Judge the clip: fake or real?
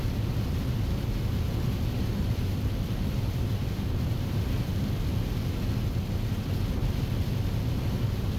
real